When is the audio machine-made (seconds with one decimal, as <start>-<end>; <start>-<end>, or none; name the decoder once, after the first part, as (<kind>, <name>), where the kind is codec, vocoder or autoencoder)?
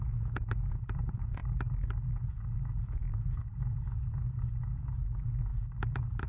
0.0-1.4 (vocoder, Vocos); 2.1-5.5